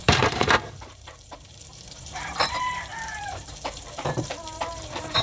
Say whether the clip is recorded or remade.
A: remade